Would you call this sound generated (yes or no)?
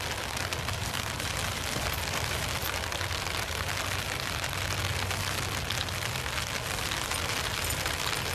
no